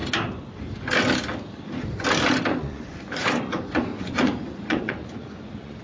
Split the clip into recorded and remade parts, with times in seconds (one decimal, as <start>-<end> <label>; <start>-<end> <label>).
0.0-2.5 recorded; 2.5-5.8 remade